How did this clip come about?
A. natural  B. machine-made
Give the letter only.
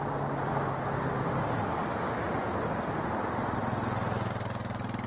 A